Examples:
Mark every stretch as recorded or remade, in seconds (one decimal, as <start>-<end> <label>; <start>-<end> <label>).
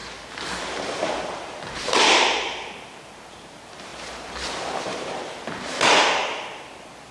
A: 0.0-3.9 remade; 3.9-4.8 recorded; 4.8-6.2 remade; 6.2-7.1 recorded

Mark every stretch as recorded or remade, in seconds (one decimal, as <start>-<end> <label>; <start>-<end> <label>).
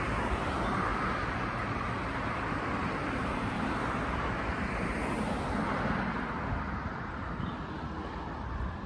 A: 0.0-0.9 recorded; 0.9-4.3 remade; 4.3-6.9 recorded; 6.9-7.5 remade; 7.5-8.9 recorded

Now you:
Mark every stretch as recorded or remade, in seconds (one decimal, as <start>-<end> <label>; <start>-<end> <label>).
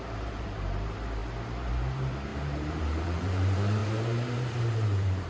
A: 0.0-1.2 remade; 1.2-1.7 recorded; 1.7-5.3 remade